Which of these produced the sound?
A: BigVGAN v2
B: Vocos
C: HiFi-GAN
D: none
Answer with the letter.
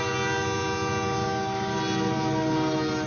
D